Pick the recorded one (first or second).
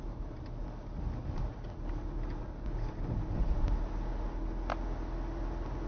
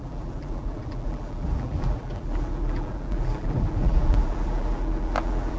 first